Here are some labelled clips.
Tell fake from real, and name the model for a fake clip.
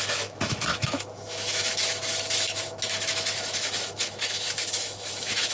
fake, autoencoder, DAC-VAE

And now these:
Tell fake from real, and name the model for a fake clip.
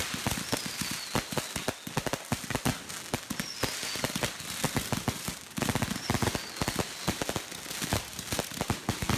real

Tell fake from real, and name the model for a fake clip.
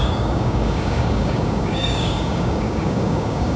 fake, codec, DAC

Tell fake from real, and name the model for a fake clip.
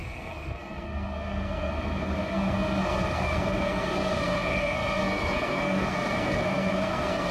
fake, codec, SNAC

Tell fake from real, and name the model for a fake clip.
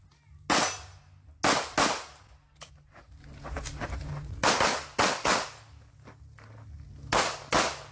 real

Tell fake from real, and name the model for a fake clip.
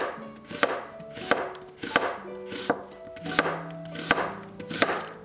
real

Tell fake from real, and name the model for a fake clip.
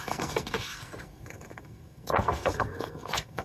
fake, codec, SNAC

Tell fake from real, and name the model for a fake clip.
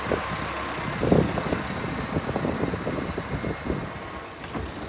real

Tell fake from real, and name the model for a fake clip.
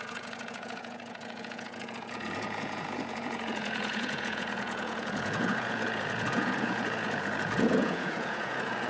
fake, vocoder, Vocos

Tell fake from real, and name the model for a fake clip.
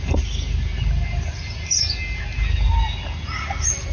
real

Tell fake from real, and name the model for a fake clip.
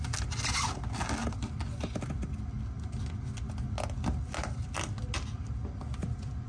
real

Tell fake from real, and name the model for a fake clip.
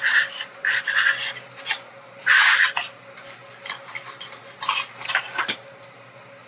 real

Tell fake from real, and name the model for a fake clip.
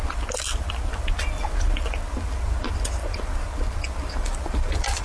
real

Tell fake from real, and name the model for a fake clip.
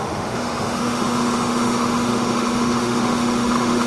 fake, autoencoder, DAC-VAE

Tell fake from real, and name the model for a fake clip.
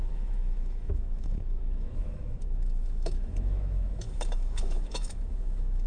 fake, autoencoder, DAC-VAE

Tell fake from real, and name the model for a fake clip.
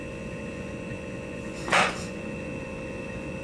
fake, vocoder, Vocos